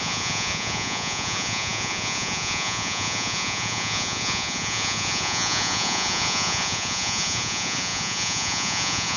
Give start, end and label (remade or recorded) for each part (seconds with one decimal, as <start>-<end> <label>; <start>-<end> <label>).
0.0-9.2 remade